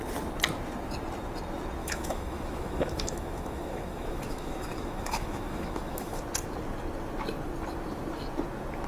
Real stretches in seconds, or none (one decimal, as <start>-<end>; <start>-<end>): 0.0-1.8; 6.2-8.9